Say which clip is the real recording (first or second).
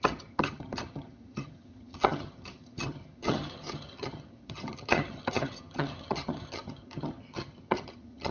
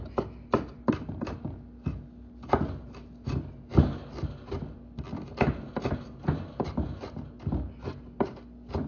second